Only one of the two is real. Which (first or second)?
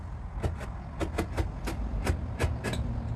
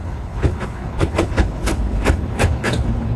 first